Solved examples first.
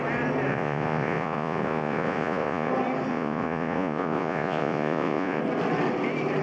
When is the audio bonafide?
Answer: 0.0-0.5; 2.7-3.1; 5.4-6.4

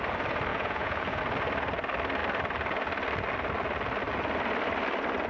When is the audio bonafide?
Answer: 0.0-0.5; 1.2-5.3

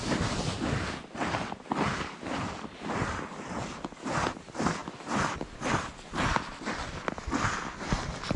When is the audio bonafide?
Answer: 0.0-8.4